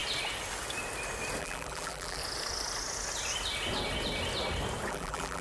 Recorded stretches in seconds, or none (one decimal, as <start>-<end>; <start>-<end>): 0.0-1.4; 2.2-4.9